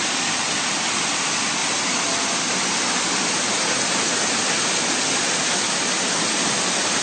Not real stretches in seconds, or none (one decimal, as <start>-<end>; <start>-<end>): none